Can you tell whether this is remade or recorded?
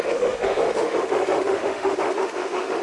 remade